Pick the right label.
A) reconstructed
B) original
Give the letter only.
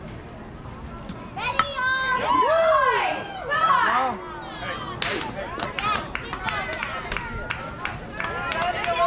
B